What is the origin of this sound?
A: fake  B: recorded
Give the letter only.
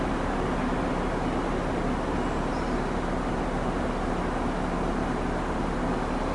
B